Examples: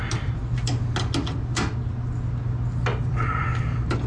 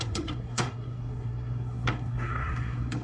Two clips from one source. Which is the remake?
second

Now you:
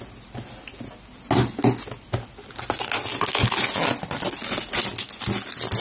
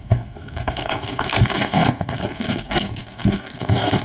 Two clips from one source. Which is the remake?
second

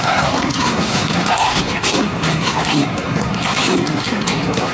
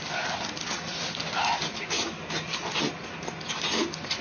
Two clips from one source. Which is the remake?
first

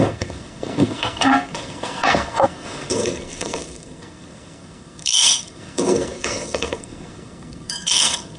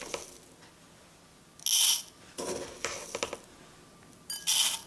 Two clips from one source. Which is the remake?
first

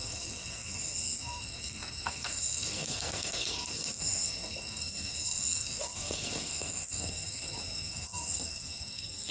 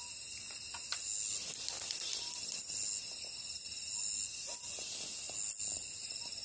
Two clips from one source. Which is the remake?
first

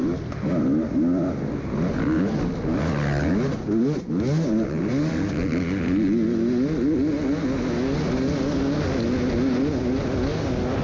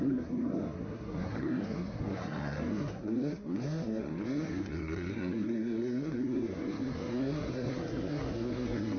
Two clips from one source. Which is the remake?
second